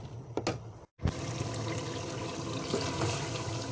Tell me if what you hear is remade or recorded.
recorded